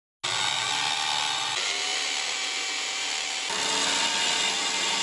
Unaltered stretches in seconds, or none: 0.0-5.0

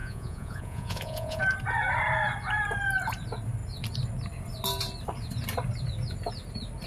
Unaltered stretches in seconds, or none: 1.4-6.9

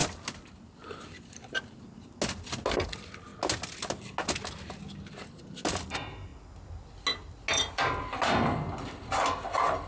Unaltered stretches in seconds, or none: 0.0-9.9

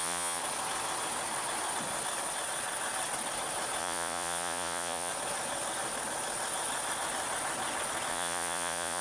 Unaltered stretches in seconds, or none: 0.4-3.8; 5.1-8.1

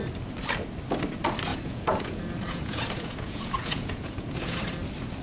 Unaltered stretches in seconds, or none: 0.0-1.5; 4.6-5.2

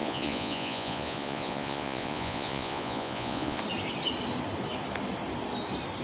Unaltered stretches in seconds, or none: 3.6-6.0

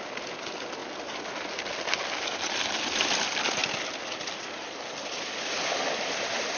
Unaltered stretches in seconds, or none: 0.0-6.6

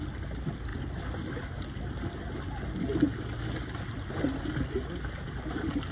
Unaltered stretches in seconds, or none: 0.0-5.9